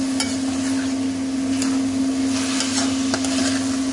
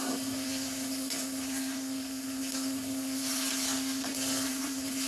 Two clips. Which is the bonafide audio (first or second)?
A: first